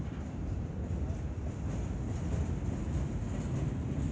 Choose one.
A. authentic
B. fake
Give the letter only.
A